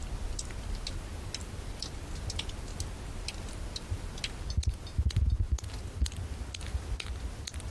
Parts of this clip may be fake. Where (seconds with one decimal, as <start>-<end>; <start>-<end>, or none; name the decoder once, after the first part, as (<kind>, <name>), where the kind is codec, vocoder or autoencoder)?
none